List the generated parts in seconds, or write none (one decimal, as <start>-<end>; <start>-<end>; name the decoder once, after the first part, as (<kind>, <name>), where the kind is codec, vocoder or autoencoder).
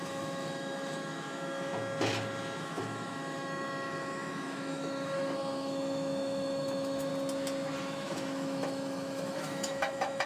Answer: 0.0-1.7 (autoencoder, DAC-VAE); 2.6-7.1; 7.8-10.3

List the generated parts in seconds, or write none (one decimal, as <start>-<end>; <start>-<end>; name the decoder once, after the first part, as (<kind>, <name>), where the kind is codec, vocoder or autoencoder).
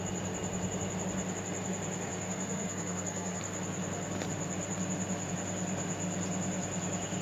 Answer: 2.1-3.4 (codec, SNAC)